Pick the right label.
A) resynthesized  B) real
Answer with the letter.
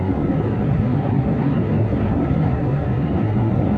A